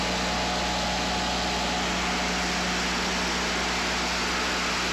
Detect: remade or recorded recorded